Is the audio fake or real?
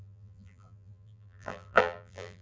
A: fake